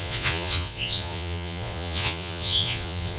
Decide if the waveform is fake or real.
fake